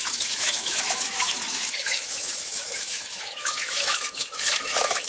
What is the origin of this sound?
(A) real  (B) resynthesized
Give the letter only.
B